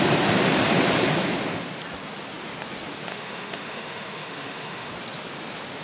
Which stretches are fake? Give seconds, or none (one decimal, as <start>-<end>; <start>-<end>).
3.1-4.9